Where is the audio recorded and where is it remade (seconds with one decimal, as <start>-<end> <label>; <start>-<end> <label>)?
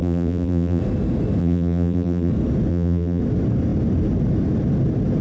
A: 0.0-0.8 remade; 0.8-1.4 recorded; 1.4-2.3 remade; 2.3-2.7 recorded; 2.7-3.2 remade; 3.2-5.2 recorded